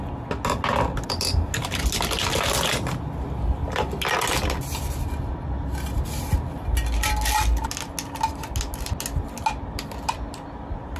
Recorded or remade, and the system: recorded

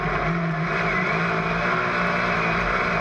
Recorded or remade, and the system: recorded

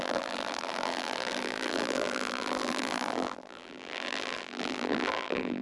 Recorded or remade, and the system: remade, vocoder, BigVGAN v2